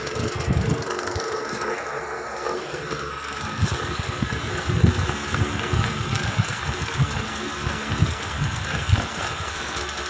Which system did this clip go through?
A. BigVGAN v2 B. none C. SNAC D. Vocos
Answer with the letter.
C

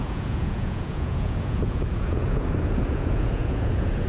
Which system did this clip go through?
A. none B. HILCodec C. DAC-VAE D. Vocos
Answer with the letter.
D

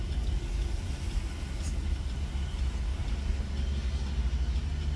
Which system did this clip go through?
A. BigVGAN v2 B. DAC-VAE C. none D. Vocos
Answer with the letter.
C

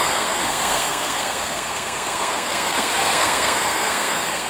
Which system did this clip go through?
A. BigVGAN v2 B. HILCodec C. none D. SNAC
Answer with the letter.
D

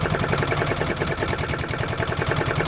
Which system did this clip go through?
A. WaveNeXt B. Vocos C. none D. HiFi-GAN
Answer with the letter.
C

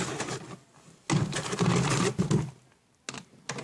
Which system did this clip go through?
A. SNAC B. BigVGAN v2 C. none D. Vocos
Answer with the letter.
C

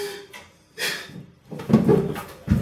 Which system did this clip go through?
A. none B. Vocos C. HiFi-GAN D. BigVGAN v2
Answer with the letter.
A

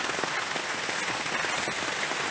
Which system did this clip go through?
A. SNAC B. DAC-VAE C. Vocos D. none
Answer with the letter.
D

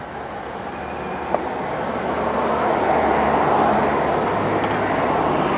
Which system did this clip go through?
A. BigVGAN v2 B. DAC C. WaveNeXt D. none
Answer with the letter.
D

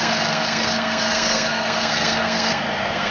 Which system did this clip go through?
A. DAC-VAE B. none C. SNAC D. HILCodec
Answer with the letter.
C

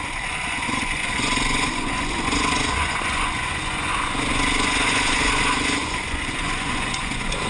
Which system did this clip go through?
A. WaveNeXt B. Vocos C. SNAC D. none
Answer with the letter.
B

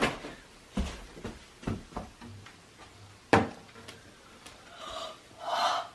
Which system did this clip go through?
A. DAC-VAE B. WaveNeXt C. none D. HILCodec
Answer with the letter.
C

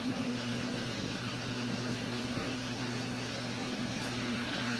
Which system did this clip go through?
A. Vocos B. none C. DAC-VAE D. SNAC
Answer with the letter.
D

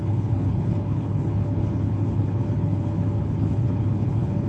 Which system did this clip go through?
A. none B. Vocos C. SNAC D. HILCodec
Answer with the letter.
D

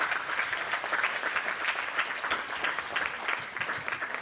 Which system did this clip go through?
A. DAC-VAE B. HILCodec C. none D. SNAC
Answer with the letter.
C